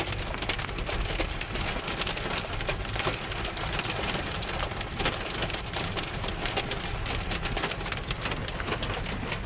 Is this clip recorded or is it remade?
recorded